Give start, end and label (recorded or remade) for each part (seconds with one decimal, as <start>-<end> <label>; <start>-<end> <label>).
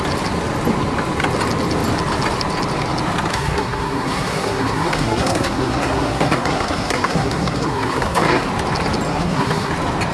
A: 0.0-3.3 recorded; 3.3-8.5 remade; 8.5-9.1 recorded; 9.1-9.7 remade; 9.7-10.1 recorded